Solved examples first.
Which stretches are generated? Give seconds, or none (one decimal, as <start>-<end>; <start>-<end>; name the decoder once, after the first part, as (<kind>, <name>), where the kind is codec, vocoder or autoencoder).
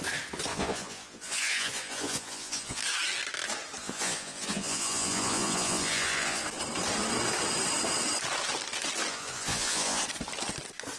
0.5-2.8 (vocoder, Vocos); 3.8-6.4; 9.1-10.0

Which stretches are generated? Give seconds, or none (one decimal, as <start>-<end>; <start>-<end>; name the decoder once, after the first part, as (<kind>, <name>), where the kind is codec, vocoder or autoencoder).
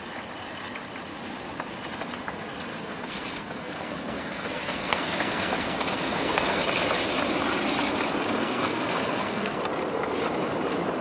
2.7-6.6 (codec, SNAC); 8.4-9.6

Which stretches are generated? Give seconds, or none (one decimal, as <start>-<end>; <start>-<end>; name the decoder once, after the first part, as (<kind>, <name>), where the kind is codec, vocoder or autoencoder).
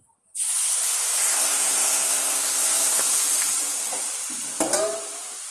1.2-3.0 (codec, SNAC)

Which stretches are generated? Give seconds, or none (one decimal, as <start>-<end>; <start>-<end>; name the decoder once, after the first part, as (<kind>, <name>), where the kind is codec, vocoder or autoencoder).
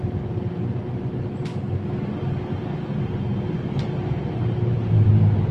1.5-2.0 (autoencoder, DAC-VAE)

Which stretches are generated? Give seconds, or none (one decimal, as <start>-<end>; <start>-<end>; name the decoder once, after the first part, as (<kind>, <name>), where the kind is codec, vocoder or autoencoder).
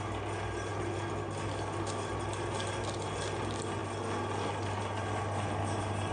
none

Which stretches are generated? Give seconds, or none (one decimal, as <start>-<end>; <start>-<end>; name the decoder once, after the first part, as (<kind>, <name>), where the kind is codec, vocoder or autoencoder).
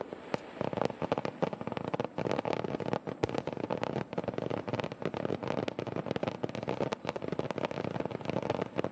none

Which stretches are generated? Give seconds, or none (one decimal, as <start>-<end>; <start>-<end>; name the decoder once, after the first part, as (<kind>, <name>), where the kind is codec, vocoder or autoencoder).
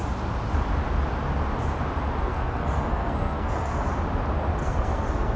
2.2-3.9 (codec, SNAC); 4.6-5.4